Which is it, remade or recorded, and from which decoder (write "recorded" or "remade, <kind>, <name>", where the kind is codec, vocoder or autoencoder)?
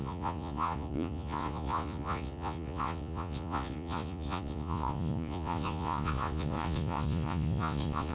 remade, vocoder, Vocos